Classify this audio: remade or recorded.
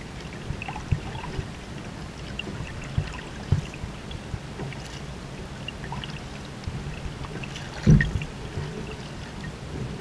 recorded